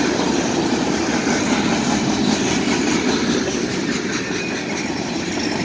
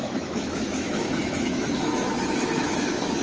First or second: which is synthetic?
second